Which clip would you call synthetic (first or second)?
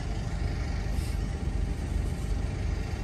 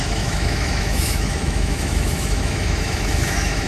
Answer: second